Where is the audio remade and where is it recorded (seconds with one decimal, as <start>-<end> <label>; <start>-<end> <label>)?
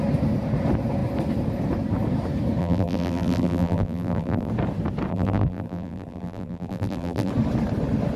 0.0-2.6 recorded; 2.6-4.5 remade; 4.5-5.1 recorded; 5.1-7.3 remade; 7.3-8.2 recorded